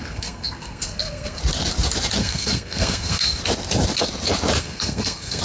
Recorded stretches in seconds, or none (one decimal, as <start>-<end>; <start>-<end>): 1.4-2.2; 3.4-4.6